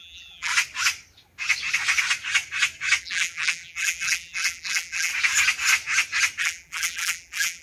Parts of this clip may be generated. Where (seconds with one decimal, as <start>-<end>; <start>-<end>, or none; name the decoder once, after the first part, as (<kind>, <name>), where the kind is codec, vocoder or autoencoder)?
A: 0.0-0.5 (vocoder, BigVGAN v2); 3.0-5.1; 6.4-7.6